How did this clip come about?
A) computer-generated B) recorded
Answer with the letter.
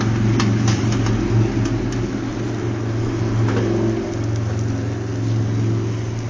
B